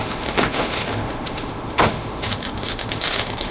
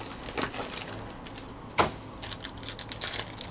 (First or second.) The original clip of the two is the second